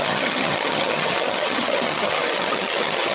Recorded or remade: remade